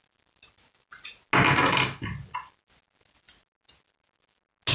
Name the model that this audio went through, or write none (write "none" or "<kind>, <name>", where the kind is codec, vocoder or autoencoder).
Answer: none